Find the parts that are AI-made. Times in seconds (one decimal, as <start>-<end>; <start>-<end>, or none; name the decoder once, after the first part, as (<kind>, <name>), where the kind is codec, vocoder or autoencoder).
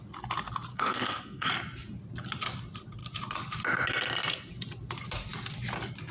0.7-1.5 (codec, SNAC)